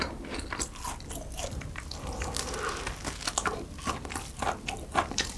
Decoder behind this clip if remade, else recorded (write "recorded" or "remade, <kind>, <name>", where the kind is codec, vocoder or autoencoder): recorded